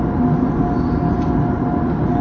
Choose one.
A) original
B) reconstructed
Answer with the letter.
A